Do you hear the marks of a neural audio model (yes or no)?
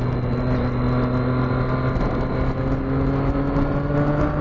no